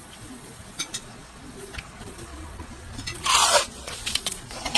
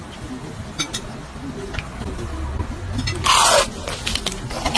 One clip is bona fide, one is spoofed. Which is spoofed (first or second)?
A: first